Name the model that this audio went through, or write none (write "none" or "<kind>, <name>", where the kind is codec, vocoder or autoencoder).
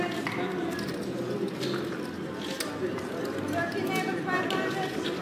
none